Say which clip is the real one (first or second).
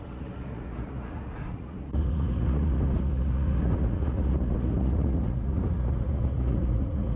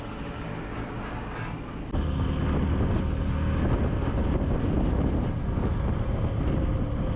second